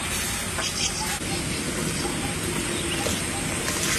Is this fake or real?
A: real